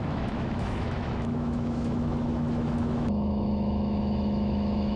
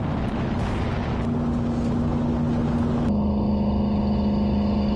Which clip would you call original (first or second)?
second